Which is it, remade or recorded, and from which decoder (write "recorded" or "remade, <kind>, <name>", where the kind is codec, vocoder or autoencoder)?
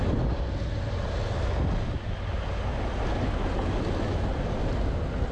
recorded